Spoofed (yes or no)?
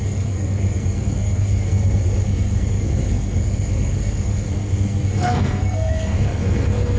yes